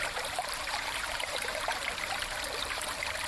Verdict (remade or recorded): remade